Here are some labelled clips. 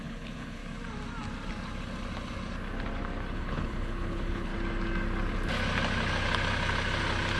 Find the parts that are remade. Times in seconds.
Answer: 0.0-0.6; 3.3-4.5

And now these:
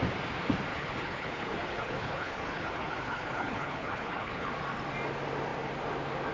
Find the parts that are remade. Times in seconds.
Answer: 0.7-4.5

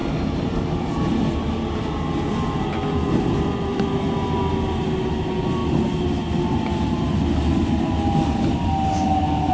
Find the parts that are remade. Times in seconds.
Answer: none

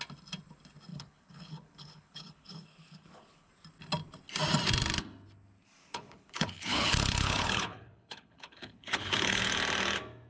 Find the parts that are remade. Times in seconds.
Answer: 0.9-3.5; 5.8-9.4

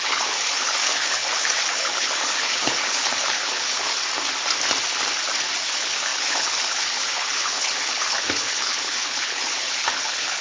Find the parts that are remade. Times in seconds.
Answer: 0.0-4.0; 5.5-10.4

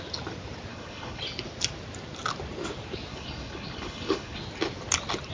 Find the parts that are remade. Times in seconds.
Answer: 0.7-1.2; 3.1-4.4

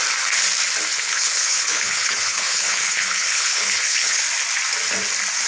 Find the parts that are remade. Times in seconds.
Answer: 0.9-4.2